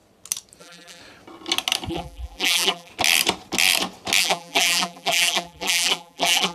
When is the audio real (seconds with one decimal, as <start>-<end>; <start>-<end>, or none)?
0.0-0.6; 1.0-1.9; 2.9-4.2